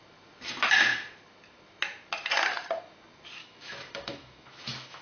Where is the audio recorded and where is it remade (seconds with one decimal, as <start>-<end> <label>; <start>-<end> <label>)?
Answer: 0.0-3.4 recorded; 3.4-5.0 remade